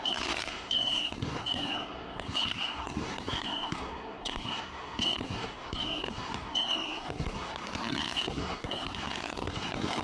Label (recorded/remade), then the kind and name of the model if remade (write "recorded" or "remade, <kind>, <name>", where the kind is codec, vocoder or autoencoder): remade, codec, SNAC